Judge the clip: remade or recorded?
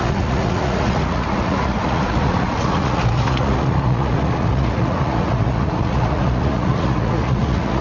remade